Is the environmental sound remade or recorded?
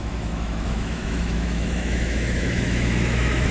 remade